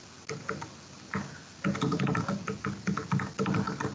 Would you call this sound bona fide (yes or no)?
yes